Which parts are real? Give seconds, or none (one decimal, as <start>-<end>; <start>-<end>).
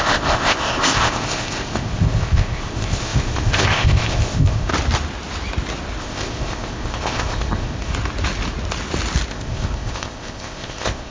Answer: 4.7-6.0; 7.9-9.3